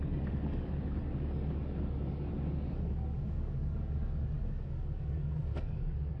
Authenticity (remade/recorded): remade